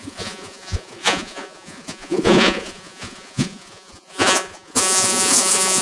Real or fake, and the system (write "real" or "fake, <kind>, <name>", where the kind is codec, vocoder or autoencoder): fake, vocoder, Vocos